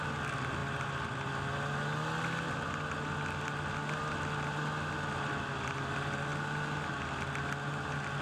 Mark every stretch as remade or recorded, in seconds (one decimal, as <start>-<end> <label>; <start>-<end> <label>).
0.0-8.2 recorded